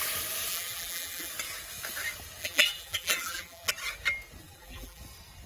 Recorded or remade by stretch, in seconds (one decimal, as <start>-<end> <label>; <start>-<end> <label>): 0.0-0.5 recorded; 0.5-1.3 remade; 1.3-2.4 recorded; 2.4-3.7 remade; 3.7-4.4 recorded; 4.4-5.0 remade; 5.0-5.5 recorded